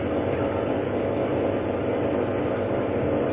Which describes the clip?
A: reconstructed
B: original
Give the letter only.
B